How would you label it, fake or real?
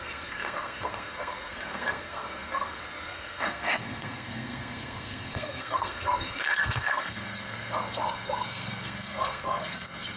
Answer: fake